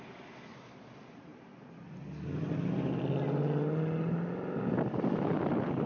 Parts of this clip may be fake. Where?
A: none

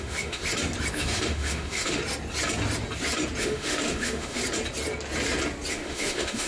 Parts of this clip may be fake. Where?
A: 0.0-0.4 (autoencoder, DAC-VAE); 0.9-2.0; 3.4-4.4; 5.7-6.5

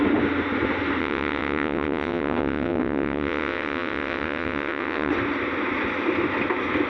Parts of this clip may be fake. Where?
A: 1.0-5.1 (vocoder, WaveNeXt)

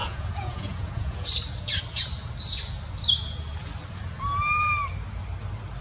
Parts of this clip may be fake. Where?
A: 0.0-1.3 (vocoder, Vocos)